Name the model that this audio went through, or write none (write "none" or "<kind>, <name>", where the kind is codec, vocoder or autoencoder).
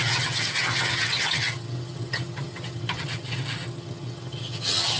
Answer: vocoder, HiFi-GAN